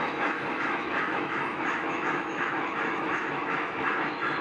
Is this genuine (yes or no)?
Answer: no